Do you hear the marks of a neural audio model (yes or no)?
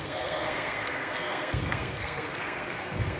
yes